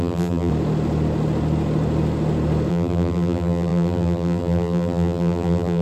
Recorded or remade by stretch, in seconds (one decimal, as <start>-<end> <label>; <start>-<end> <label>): 0.0-0.5 remade; 0.5-2.7 recorded; 2.7-5.8 remade